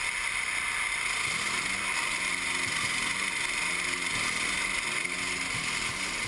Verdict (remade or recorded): recorded